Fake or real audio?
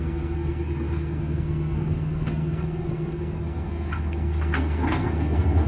fake